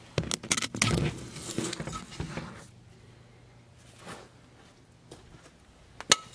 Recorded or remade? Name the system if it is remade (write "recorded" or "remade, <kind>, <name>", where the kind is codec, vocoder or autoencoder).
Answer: recorded